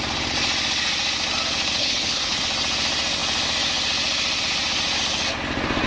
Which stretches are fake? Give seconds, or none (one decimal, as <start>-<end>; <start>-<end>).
1.8-2.4